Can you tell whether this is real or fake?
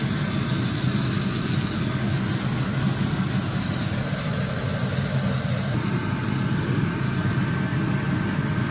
real